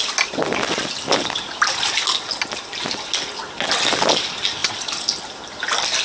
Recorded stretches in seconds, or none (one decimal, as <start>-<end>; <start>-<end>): 0.0-6.0